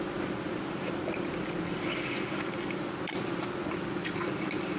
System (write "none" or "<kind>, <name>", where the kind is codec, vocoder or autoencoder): none